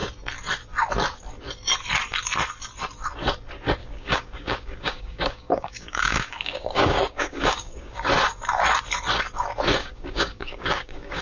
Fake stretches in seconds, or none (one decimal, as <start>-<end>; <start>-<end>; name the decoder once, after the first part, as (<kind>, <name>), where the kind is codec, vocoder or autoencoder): 3.8-8.1 (codec, DAC); 9.8-11.2